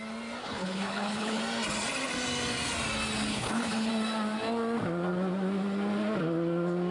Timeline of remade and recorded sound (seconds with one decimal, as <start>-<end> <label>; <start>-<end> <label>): 0.0-0.4 recorded; 0.4-1.4 remade; 1.4-3.3 recorded; 3.3-3.9 remade; 3.9-6.9 recorded